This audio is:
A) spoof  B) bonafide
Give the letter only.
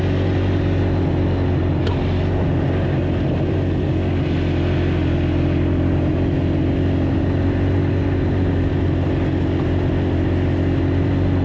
B